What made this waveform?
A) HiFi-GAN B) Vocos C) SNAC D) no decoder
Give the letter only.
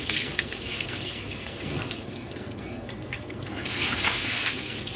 C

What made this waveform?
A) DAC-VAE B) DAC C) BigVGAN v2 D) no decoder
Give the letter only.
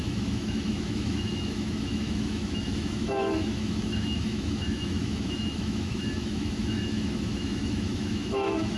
A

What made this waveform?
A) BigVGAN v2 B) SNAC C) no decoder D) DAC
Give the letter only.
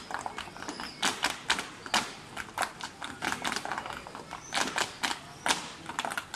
C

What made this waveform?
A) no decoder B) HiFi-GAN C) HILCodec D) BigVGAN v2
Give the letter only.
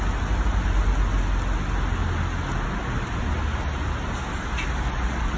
A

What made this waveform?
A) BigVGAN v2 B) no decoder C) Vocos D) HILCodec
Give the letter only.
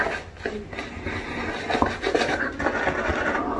B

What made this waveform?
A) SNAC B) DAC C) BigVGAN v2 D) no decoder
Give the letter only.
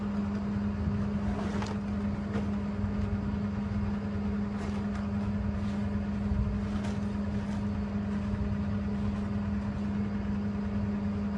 D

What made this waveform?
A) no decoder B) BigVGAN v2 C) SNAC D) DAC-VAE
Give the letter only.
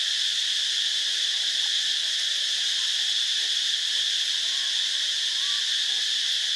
A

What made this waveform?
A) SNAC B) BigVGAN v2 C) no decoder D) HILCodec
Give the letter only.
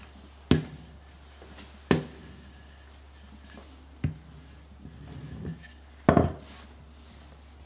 C